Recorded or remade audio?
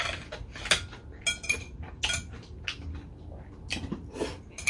recorded